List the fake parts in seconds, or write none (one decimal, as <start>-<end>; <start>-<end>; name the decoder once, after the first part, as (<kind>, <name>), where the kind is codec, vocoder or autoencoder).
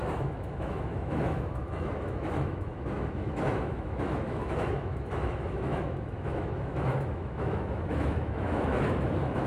0.0-9.5 (autoencoder, DAC-VAE)